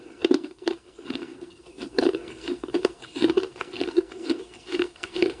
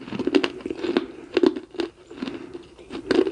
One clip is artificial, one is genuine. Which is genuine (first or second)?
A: second